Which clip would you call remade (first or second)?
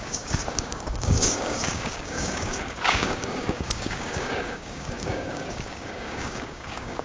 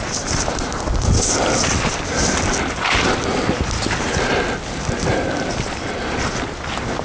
first